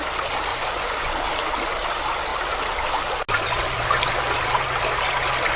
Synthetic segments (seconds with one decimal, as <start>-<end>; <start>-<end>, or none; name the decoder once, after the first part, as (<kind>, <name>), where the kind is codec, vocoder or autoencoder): 0.5-1.2 (vocoder, Vocos)

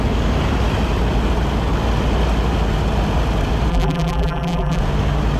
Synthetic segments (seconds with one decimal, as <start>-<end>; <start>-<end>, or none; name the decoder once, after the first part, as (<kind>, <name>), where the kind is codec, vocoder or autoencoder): 3.7-4.8 (vocoder, BigVGAN v2)